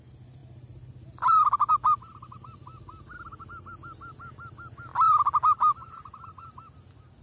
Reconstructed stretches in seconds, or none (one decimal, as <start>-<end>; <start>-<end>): 0.4-1.7; 4.9-6.4